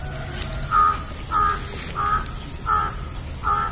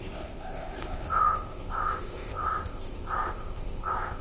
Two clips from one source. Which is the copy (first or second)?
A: second